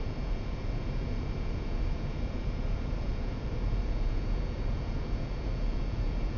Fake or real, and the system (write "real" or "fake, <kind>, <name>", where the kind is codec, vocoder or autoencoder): fake, vocoder, Vocos